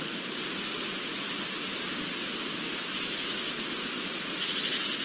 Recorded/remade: recorded